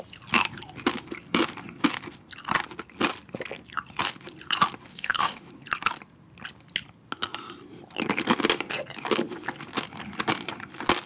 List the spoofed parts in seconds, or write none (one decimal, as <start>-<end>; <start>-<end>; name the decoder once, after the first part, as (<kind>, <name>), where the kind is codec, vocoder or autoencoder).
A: 4.9-5.5 (autoencoder, DAC-VAE)